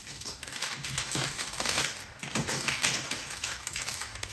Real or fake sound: fake